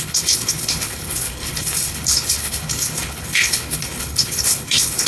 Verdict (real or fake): fake